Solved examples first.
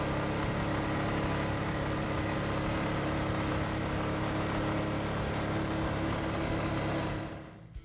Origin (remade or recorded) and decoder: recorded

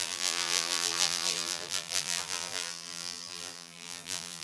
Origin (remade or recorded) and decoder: remade, vocoder, BigVGAN v2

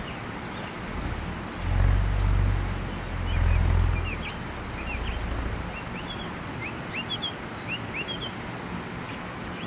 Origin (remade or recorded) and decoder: recorded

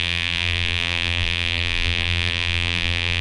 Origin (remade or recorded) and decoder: remade, vocoder, BigVGAN v2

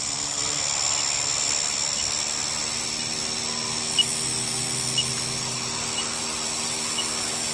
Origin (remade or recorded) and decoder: recorded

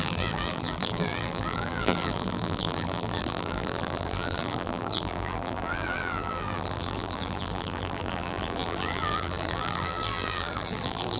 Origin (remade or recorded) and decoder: remade, vocoder, BigVGAN v2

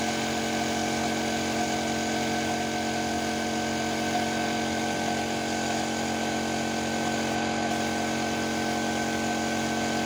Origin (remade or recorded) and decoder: recorded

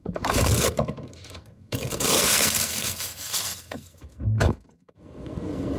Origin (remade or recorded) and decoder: remade, codec, SNAC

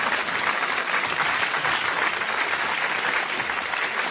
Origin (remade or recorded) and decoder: recorded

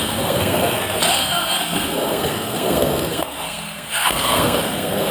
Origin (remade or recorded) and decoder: remade, codec, SNAC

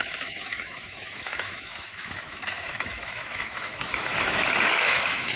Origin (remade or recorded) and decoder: remade, autoencoder, DAC-VAE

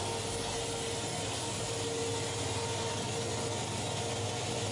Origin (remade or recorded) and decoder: recorded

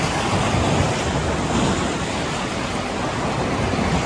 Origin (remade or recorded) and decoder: recorded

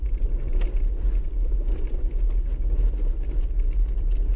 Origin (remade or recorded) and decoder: recorded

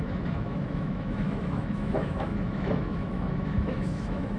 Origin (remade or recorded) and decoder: remade, autoencoder, DAC-VAE